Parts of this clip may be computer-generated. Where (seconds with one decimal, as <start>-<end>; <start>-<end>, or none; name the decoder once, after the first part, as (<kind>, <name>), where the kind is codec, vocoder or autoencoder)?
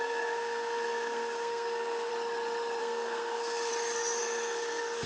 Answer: 0.0-2.1 (codec, SNAC); 2.8-3.7; 4.2-5.1